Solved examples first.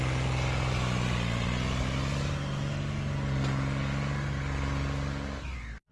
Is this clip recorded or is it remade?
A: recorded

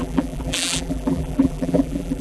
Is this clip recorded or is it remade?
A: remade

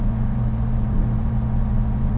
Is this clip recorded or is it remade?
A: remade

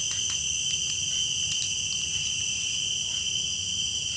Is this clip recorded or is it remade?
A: recorded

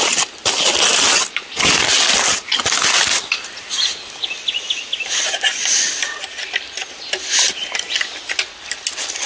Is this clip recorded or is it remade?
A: recorded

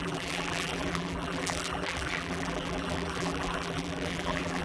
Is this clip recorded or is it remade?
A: remade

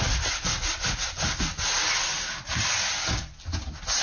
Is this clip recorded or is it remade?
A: recorded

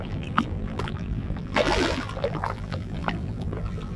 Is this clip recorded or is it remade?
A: remade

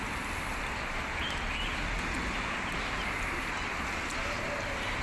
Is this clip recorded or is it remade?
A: remade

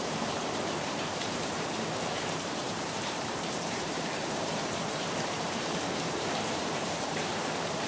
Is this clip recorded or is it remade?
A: remade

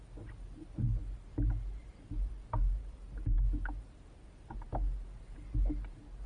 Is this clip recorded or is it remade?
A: remade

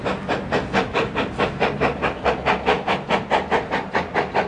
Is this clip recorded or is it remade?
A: recorded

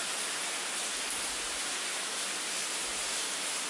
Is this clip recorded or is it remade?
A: remade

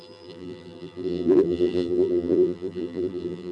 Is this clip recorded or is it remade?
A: remade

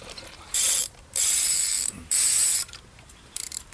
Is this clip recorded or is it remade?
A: remade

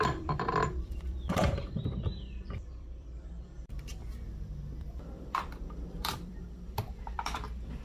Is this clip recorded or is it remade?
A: remade